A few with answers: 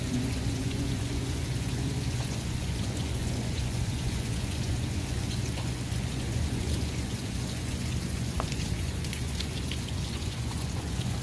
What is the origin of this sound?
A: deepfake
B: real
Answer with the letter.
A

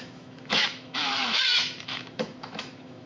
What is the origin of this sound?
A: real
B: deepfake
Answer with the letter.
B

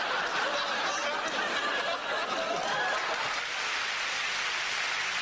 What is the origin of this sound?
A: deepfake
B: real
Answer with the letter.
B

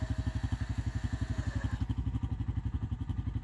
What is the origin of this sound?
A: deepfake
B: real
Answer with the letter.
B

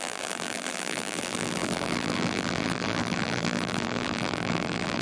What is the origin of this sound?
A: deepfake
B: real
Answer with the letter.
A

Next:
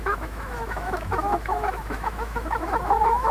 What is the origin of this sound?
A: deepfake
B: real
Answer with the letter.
A